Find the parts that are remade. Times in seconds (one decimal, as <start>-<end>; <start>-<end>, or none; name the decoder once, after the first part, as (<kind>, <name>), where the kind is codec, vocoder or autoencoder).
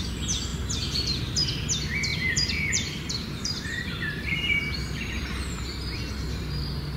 2.1-5.6 (vocoder, BigVGAN v2)